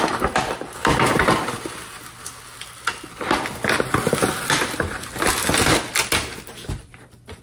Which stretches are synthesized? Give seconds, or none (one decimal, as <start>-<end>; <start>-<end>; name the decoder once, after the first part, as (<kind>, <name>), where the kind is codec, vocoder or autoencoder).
none

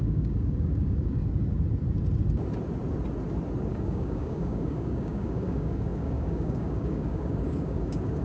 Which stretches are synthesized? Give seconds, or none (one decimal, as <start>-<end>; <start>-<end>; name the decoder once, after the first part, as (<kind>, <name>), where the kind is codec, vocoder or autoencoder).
0.0-1.2 (codec, DAC); 3.6-8.2